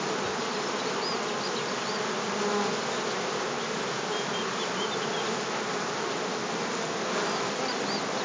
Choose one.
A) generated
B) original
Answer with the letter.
B